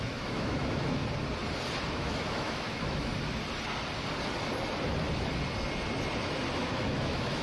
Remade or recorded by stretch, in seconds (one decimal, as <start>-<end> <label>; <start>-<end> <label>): 0.0-1.0 remade; 1.0-1.9 recorded; 1.9-3.1 remade; 3.1-6.6 recorded; 6.6-7.4 remade